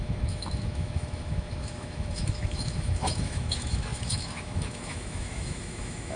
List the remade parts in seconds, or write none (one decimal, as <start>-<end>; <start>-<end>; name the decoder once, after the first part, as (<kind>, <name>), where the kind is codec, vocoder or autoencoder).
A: 0.0-6.2 (autoencoder, DAC-VAE)